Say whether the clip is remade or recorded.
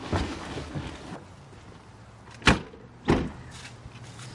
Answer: recorded